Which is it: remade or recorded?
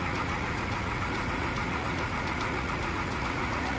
remade